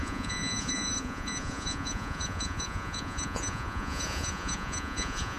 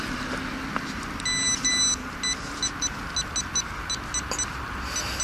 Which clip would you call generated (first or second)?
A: first